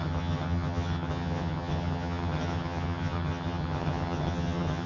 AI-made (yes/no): yes